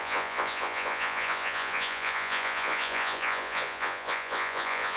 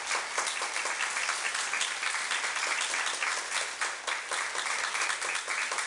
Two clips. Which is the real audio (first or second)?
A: second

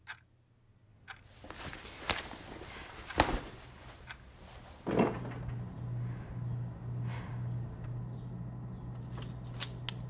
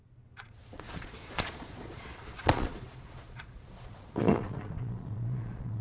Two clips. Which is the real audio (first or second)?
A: first